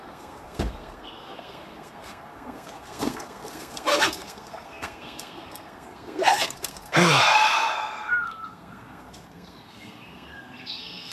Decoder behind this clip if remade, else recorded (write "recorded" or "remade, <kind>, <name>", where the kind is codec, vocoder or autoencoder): remade, codec, SNAC